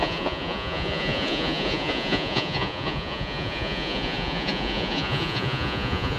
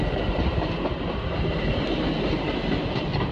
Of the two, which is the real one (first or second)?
second